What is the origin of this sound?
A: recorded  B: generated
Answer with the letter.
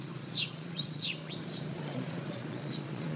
B